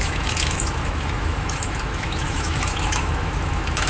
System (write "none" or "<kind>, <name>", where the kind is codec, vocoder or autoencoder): autoencoder, DAC-VAE